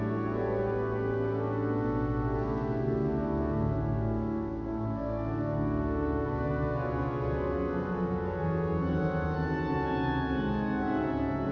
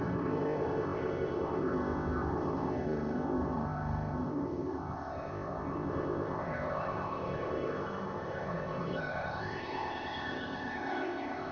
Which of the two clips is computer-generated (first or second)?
second